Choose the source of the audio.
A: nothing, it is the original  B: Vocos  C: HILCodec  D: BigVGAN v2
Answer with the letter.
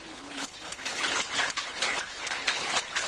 C